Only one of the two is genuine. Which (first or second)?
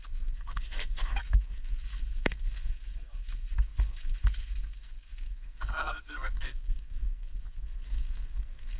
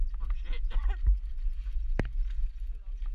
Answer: second